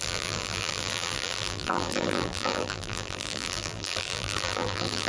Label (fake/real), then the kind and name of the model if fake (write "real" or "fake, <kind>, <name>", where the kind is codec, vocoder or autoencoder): fake, vocoder, BigVGAN v2